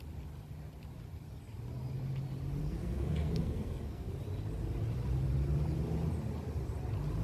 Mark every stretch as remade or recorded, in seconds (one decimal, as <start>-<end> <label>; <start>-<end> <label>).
0.0-2.6 recorded; 2.6-4.1 remade; 4.1-7.2 recorded